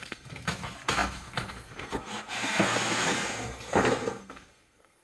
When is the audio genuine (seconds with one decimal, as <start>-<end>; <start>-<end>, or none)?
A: none